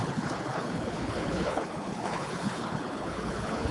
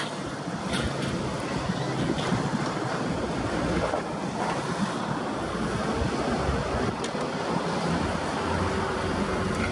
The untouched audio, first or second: second